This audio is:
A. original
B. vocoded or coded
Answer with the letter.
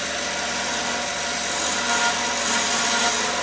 A